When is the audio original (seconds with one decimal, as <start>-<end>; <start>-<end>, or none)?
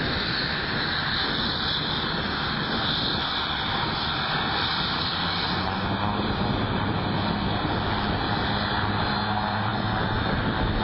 0.0-10.8